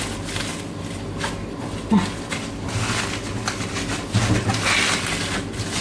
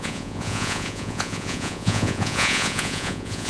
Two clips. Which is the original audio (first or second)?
first